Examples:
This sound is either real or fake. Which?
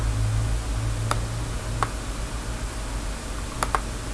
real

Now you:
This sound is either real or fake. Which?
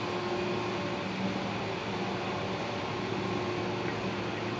real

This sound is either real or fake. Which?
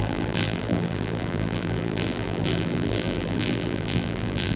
fake